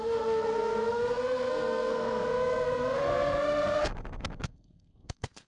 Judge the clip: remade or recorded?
remade